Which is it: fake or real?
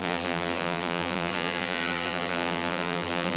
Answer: fake